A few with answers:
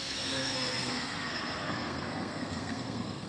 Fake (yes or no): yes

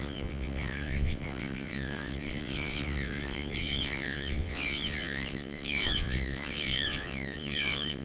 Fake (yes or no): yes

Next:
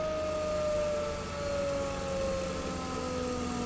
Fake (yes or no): no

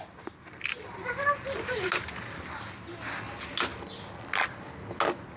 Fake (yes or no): no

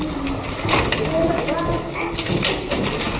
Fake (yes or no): no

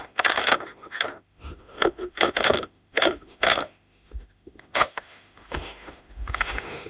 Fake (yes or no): yes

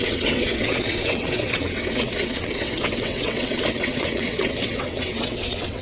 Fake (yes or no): yes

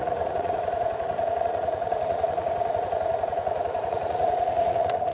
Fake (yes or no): yes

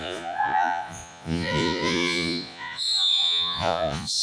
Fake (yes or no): yes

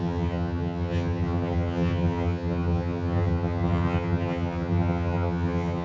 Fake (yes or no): yes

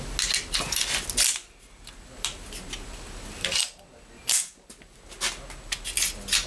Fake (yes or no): no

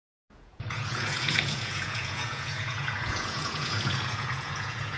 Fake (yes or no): yes